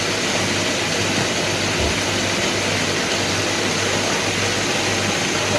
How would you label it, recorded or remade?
recorded